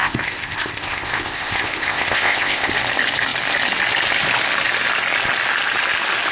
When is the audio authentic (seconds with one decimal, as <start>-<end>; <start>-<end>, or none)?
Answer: 2.7-6.3